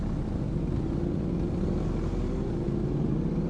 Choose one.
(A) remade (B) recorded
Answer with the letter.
B